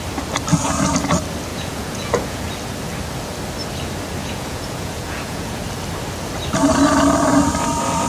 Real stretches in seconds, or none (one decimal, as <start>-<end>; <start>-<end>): 0.0-1.5; 2.4-4.2; 5.6-8.1

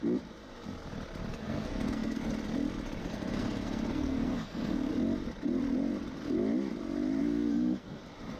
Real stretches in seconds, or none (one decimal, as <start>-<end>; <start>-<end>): 0.0-1.3; 2.3-3.0; 4.9-7.2; 8.0-8.4

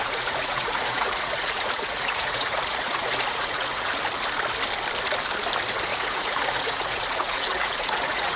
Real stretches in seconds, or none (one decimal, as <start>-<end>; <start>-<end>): 3.9-6.0